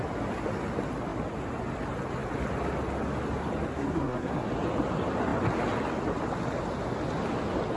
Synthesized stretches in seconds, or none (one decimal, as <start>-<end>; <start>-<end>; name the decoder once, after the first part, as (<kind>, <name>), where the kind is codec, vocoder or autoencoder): 3.7-4.5 (codec, SNAC)